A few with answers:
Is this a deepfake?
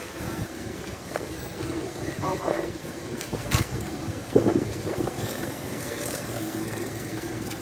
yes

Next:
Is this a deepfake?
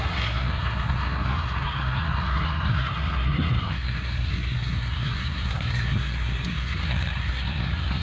yes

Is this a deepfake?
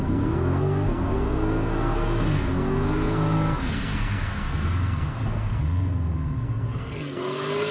yes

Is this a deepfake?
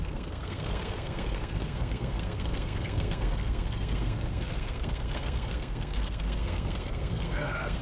yes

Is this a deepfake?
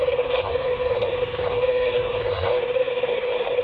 yes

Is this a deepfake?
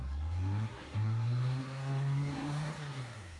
yes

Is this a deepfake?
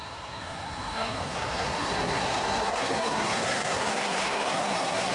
yes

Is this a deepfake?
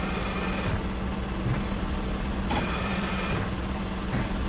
no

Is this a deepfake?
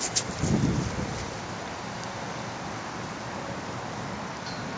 no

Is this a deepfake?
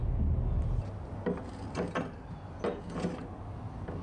no